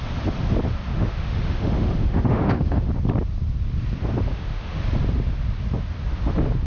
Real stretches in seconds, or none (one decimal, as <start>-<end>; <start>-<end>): 0.0-0.9; 2.9-4.3; 4.8-6.7